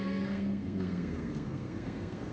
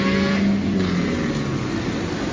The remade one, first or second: first